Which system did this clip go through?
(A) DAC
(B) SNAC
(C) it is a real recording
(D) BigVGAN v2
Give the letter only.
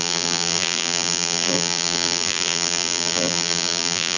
D